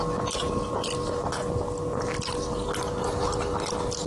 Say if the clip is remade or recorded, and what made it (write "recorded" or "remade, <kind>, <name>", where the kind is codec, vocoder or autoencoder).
recorded